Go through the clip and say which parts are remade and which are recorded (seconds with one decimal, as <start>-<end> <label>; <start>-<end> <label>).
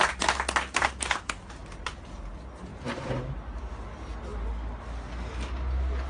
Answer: 0.0-1.6 recorded; 1.6-2.2 remade; 2.2-2.7 recorded; 2.7-3.3 remade; 3.3-6.1 recorded